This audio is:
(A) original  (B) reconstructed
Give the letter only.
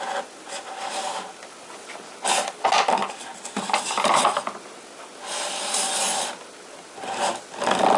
A